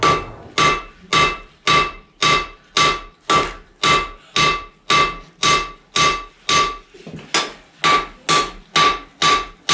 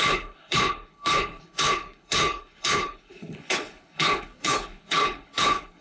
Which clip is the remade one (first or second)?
second